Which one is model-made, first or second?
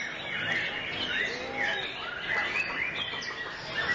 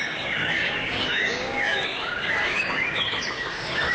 second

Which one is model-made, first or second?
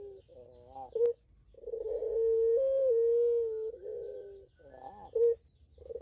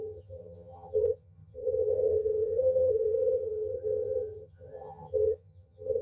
second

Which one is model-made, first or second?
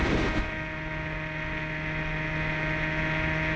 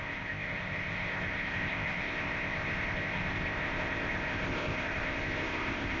second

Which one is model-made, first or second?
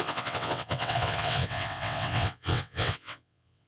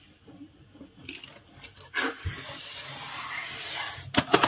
first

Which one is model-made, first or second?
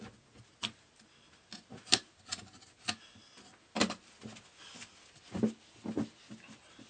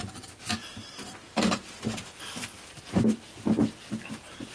second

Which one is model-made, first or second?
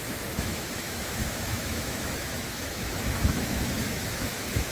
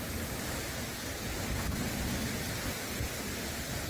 first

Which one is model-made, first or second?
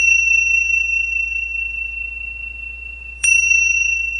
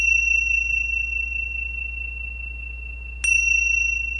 first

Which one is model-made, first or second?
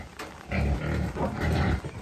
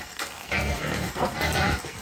second